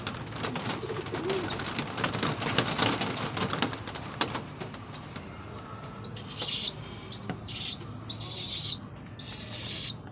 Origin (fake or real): real